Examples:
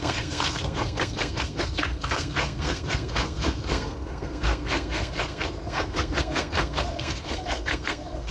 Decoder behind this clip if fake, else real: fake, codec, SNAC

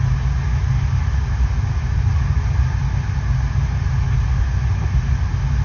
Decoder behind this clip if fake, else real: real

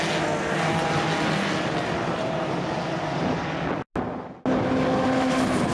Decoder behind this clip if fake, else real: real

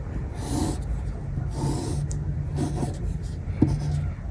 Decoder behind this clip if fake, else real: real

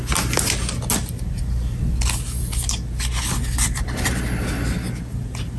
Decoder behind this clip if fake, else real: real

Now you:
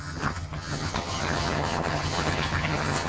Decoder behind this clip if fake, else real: fake, vocoder, HiFi-GAN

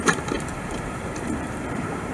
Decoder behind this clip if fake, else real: fake, vocoder, BigVGAN v2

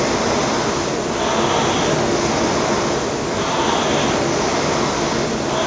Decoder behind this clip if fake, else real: real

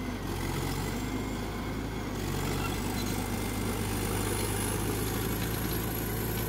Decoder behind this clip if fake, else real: real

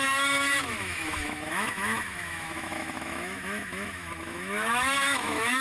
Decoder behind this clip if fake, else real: fake, autoencoder, DAC-VAE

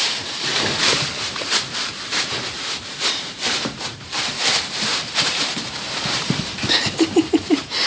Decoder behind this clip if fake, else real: fake, vocoder, BigVGAN v2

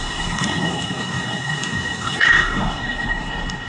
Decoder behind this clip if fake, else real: fake, codec, SNAC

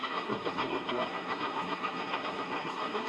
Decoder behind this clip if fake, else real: fake, codec, SNAC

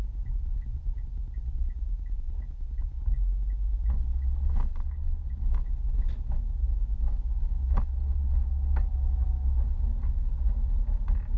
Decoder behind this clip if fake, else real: real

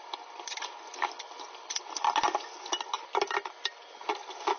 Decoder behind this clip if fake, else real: real